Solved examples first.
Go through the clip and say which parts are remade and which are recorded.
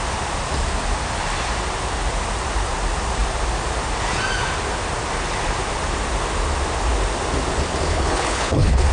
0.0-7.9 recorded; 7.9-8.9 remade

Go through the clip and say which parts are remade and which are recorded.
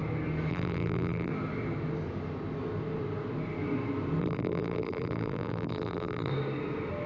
0.0-0.5 recorded; 0.5-1.3 remade; 1.3-4.2 recorded; 4.2-6.3 remade; 6.3-7.1 recorded